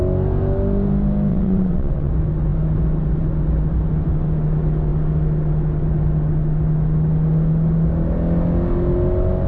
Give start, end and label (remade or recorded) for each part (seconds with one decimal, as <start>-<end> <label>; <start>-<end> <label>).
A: 0.0-1.3 recorded; 1.3-2.1 remade; 2.1-9.5 recorded